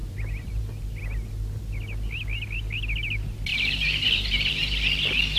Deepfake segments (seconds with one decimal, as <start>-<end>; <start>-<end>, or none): 0.0-1.0; 3.5-4.5